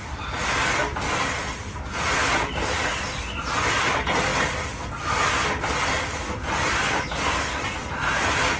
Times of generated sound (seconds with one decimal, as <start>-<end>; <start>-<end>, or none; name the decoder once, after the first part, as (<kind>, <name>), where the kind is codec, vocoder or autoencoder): none